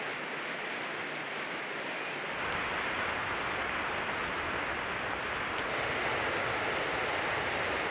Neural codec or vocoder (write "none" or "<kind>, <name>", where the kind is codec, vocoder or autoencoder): none